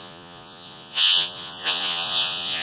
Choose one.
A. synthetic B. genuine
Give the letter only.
A